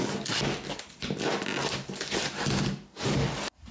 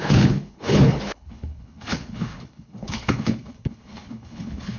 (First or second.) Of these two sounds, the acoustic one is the first